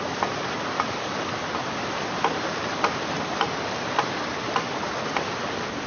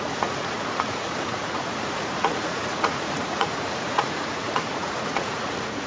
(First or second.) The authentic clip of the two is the first